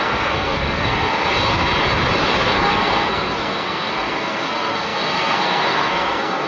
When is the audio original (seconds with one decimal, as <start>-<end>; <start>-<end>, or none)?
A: 1.1-2.4